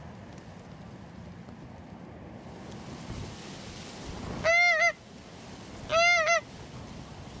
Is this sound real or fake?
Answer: real